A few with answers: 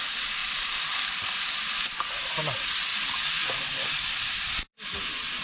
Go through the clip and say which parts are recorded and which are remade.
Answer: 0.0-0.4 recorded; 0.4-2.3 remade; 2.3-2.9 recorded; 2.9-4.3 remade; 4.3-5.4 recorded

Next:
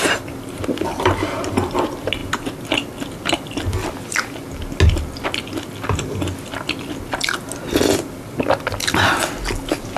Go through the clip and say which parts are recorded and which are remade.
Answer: 0.0-10.0 recorded